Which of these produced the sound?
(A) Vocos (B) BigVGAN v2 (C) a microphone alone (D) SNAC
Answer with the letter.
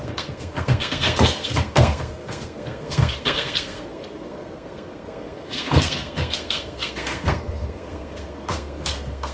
D